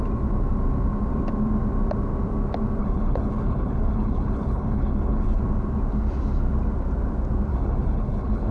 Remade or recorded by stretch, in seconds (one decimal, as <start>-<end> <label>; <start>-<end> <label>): 0.0-2.8 recorded; 2.8-5.4 remade; 5.4-7.5 recorded; 7.5-8.5 remade